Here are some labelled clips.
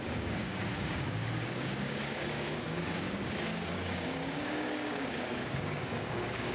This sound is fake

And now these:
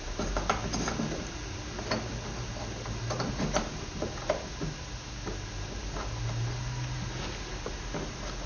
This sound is real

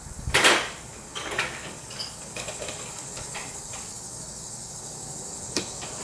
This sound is fake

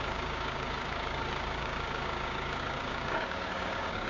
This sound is fake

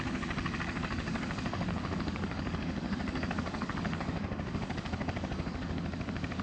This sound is fake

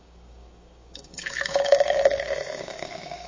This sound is fake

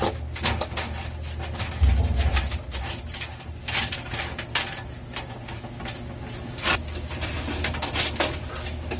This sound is real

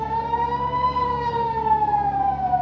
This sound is fake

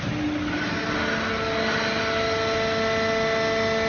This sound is real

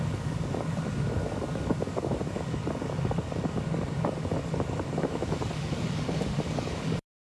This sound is fake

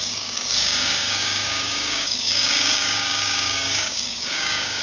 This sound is fake